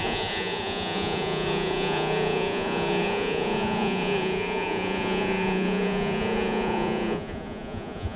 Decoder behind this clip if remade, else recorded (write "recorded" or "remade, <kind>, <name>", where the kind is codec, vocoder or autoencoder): remade, vocoder, Vocos